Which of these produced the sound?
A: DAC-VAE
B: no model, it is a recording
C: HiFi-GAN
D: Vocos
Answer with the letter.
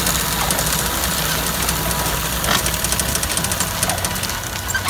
B